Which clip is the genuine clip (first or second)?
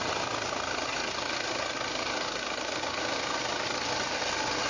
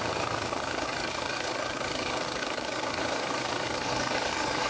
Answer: first